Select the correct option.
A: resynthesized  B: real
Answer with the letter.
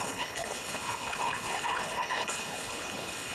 A